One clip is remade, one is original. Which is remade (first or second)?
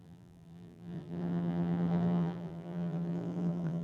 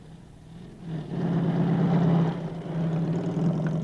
first